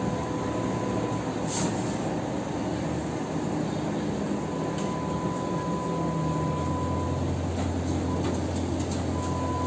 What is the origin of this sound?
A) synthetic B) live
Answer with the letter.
B